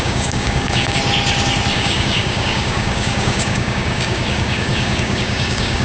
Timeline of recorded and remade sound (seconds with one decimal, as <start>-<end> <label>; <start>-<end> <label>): 0.0-1.0 remade; 1.0-1.7 recorded; 1.7-5.8 remade